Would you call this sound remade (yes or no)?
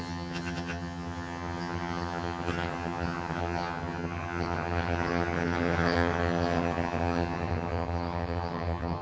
yes